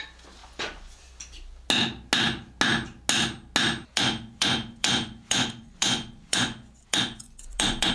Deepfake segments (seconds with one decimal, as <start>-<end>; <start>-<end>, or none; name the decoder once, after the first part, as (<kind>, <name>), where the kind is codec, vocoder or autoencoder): 0.4-1.1 (vocoder, Vocos); 3.9-7.9